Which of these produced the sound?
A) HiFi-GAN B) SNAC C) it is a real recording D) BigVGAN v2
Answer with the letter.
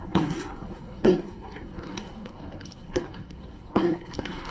B